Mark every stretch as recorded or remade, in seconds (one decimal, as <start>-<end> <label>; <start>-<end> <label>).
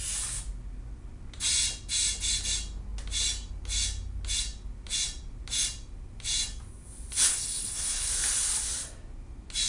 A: 0.0-7.3 recorded; 7.3-8.1 remade; 8.1-9.7 recorded